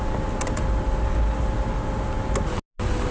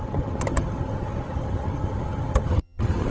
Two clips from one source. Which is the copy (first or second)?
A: second